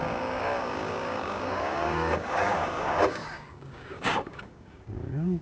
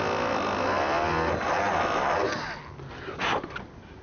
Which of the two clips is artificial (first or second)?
first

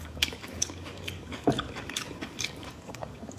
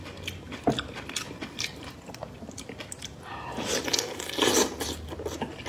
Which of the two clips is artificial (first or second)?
first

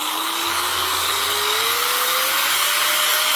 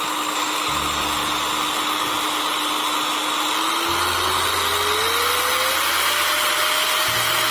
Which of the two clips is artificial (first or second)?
first